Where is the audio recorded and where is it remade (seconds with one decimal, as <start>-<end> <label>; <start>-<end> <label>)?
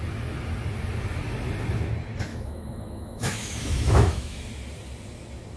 0.0-2.3 recorded; 2.3-4.5 remade; 4.5-5.6 recorded